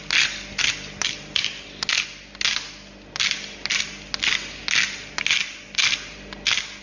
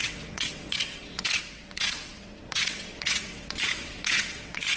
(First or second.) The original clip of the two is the first